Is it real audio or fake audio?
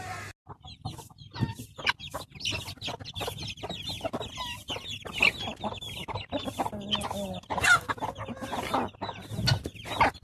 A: real